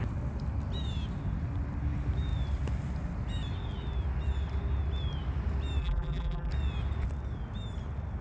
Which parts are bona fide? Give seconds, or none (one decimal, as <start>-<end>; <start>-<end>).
0.0-5.8; 6.5-8.2